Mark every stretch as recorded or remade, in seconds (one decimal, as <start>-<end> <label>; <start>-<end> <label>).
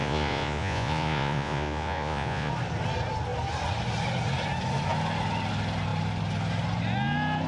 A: 0.0-2.5 remade; 2.5-7.5 recorded